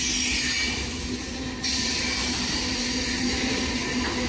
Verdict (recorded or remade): recorded